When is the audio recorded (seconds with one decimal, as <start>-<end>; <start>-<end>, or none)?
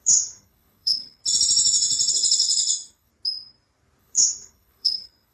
1.2-2.1; 3.1-4.0